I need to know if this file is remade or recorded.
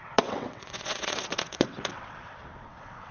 remade